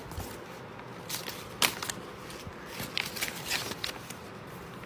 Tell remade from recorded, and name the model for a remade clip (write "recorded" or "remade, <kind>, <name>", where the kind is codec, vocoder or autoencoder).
recorded